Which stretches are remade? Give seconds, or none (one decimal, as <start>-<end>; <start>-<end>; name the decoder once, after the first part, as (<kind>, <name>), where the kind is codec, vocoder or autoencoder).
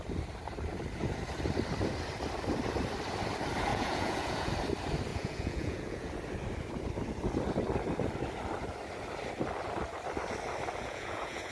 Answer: 3.7-4.5 (vocoder, Vocos); 5.1-6.1; 10.8-11.5